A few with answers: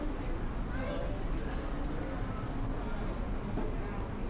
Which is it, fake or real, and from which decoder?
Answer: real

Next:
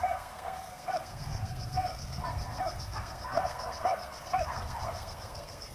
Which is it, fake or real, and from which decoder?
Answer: fake, codec, SNAC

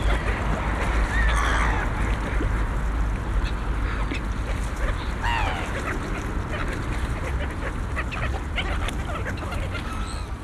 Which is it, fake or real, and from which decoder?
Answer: real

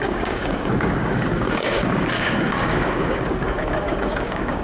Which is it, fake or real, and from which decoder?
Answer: fake, codec, DAC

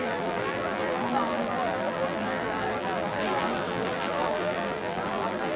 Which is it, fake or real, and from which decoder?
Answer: fake, vocoder, BigVGAN v2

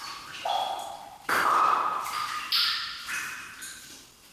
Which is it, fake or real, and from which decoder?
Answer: real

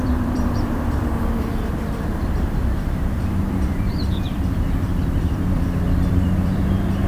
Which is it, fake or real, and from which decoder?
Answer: fake, vocoder, BigVGAN v2